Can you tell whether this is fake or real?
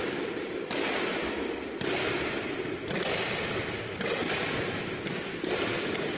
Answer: real